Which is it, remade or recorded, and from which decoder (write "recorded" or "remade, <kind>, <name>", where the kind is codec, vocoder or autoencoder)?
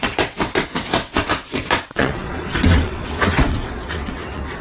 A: remade, vocoder, WaveNeXt